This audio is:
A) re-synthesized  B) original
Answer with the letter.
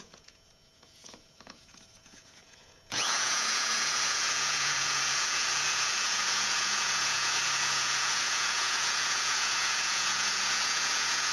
A